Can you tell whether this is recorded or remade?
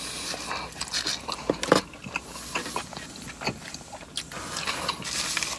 recorded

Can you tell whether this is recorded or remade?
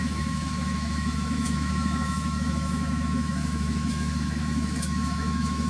remade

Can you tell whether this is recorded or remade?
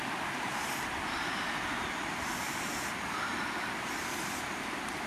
recorded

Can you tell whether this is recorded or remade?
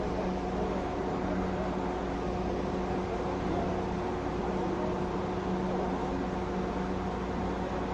recorded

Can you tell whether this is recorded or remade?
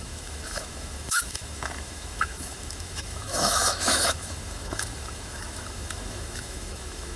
remade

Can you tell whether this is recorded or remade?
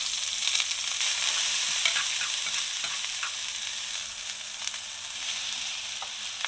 recorded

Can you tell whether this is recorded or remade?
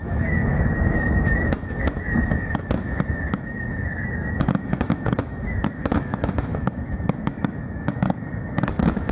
remade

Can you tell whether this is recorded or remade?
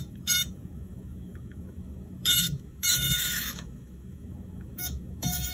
remade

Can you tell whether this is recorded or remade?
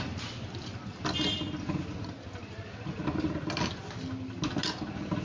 recorded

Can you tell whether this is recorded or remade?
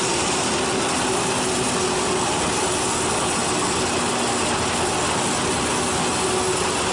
recorded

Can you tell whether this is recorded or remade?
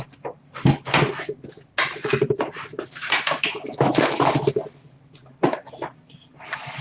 recorded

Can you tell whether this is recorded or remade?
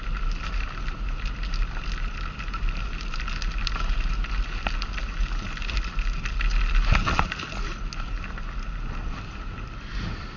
recorded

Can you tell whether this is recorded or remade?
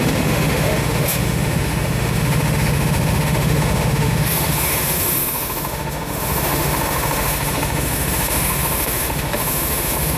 remade